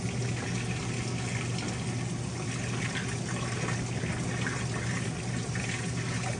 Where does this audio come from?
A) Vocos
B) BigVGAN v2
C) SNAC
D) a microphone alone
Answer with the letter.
D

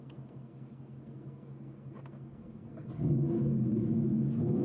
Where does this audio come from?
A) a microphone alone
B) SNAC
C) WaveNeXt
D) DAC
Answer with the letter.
B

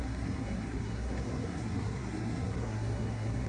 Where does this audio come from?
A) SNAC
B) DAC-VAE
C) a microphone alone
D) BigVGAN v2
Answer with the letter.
A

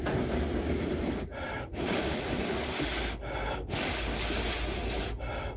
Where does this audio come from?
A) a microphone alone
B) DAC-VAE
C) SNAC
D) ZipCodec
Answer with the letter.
A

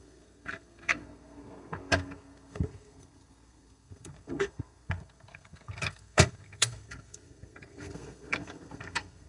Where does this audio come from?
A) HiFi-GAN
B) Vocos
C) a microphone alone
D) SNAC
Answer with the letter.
D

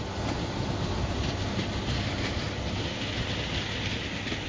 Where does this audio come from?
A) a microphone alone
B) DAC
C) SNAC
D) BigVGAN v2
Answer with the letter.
A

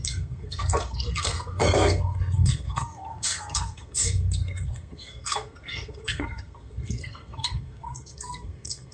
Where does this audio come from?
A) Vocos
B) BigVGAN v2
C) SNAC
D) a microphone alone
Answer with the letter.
C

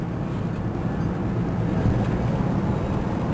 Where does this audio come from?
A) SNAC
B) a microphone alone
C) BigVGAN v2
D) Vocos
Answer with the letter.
B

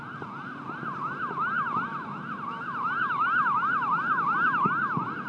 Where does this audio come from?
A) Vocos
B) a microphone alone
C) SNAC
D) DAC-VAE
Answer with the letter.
B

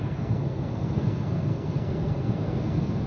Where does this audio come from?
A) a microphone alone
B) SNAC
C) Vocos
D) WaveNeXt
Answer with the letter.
B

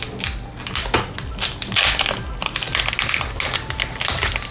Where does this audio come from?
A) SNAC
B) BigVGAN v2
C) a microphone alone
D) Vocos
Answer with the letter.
C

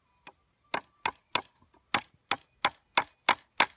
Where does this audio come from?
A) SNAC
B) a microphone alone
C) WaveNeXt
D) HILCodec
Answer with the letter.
B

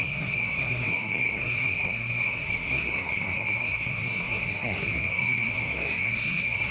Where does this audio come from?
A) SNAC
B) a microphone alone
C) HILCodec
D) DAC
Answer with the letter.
A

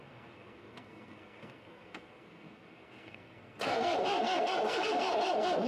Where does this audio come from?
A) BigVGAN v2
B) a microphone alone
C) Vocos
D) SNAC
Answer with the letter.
D